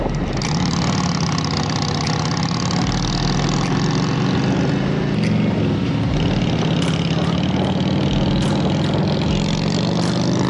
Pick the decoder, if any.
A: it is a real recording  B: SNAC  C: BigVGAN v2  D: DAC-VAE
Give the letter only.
A